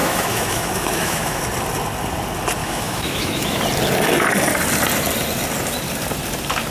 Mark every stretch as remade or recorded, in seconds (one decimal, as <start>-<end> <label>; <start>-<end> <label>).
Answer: 0.0-1.4 remade; 1.4-2.6 recorded; 2.6-3.6 remade; 3.6-6.7 recorded